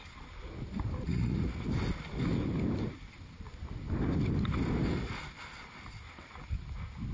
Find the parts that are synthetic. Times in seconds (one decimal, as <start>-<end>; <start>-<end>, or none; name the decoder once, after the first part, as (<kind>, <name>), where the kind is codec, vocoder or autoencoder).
1.1-1.6 (vocoder, Vocos)